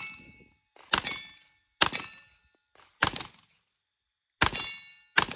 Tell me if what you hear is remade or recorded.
recorded